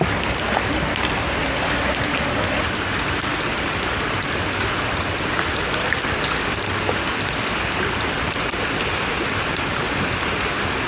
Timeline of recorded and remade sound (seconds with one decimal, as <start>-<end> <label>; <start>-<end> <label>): 0.0-10.9 recorded